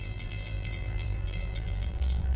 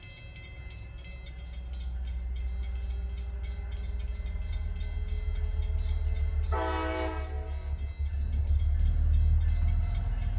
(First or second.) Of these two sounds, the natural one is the second